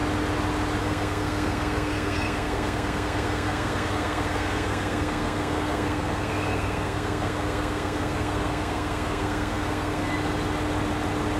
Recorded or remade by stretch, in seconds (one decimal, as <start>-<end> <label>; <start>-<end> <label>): 0.0-0.8 recorded; 0.8-10.1 remade; 10.1-11.4 recorded